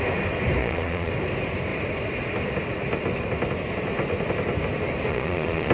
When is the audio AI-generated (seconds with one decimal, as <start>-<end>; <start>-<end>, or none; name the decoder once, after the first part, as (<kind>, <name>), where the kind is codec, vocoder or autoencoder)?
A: 0.6-1.1 (vocoder, Vocos); 5.1-5.7